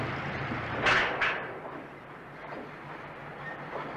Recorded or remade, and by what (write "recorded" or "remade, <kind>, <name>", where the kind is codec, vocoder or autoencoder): recorded